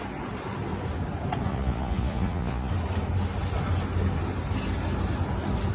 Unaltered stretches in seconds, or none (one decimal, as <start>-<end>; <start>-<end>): 0.0-1.5; 2.7-5.7